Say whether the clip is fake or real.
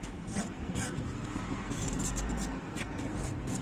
fake